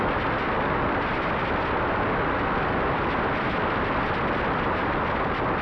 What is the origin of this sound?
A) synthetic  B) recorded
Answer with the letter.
B